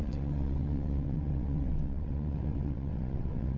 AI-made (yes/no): yes